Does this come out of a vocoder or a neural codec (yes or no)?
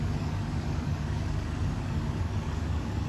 yes